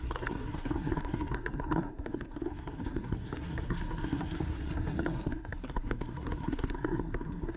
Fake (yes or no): yes